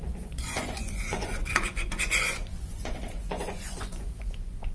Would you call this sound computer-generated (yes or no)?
yes